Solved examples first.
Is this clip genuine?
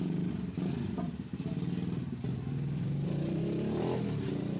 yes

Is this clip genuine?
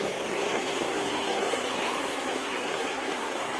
no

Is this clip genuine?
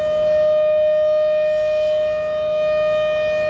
yes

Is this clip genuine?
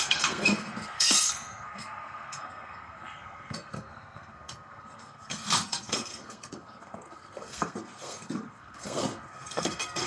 no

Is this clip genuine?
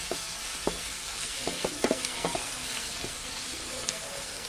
no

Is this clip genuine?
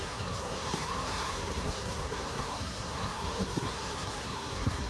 no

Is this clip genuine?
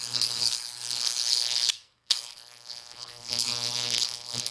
no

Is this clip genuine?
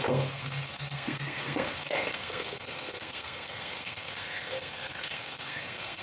no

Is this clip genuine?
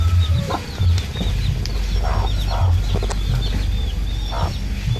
yes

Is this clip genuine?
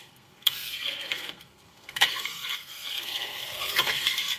no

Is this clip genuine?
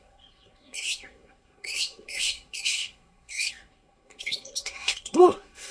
no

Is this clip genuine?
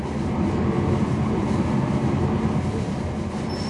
yes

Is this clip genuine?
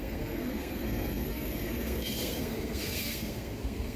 no